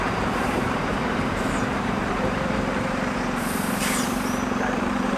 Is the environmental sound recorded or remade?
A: remade